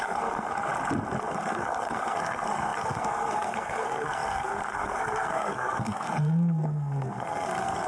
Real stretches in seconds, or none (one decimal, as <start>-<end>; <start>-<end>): 0.7-1.3